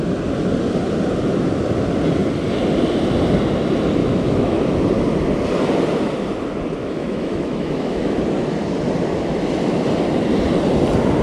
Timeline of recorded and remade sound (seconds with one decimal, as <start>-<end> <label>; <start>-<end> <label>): 0.0-4.0 recorded; 4.0-4.6 remade; 4.6-6.8 recorded; 6.8-8.2 remade; 8.2-11.2 recorded